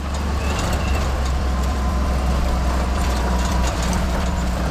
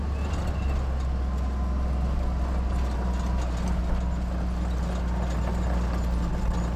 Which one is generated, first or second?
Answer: first